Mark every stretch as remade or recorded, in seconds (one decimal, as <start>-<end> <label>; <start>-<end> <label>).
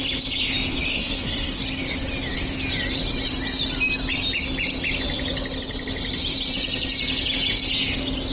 0.0-0.9 recorded; 0.9-1.6 remade; 1.6-8.3 recorded